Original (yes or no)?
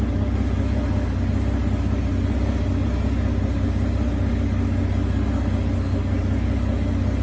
yes